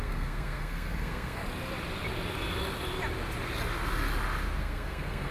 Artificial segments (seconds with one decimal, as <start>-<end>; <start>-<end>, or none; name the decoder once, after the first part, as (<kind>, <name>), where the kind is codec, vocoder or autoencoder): 0.0-1.4 (codec, SNAC); 4.6-5.3